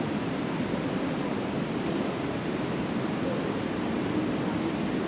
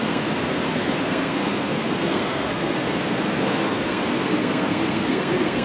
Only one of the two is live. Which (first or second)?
first